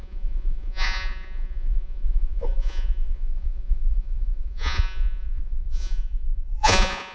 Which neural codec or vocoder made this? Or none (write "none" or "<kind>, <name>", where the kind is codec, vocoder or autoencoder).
vocoder, Vocos